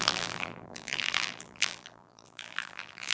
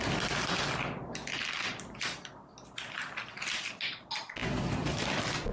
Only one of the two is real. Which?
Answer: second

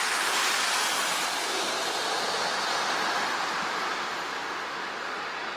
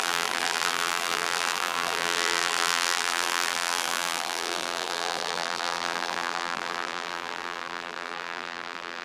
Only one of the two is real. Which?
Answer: first